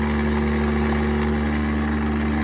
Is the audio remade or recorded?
recorded